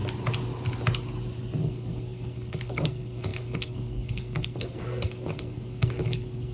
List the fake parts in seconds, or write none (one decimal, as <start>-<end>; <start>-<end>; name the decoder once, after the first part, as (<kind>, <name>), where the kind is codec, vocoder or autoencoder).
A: 1.6-6.5 (codec, SNAC)